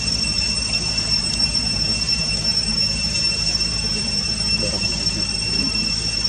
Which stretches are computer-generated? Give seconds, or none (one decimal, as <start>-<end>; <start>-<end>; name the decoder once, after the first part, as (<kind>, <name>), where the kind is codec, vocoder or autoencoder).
1.2-5.0 (vocoder, BigVGAN v2)